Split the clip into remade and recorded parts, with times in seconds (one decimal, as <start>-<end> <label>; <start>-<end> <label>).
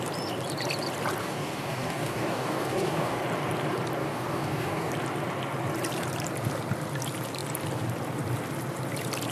0.0-1.2 recorded; 1.2-3.2 remade; 3.2-4.0 recorded; 4.0-4.9 remade; 4.9-9.3 recorded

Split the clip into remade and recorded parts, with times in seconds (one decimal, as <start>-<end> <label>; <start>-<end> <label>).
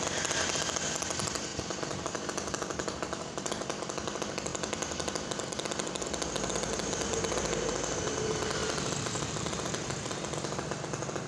0.0-1.5 recorded; 1.5-3.5 remade; 3.5-8.6 recorded; 8.6-10.1 remade; 10.1-11.3 recorded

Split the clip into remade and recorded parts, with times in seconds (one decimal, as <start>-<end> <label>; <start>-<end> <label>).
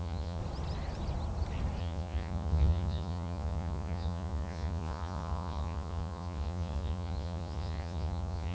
0.0-0.4 remade; 0.4-1.8 recorded; 1.8-8.5 remade